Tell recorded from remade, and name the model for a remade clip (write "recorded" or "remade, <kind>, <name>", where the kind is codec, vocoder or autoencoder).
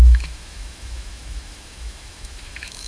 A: remade, autoencoder, DAC-VAE